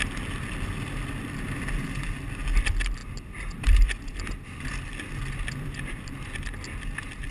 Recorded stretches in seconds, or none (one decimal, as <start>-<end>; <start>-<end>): 0.0-7.3